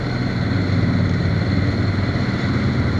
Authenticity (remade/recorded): recorded